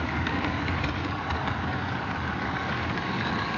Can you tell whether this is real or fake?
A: fake